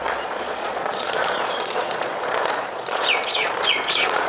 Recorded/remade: remade